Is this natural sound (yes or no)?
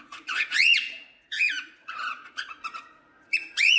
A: no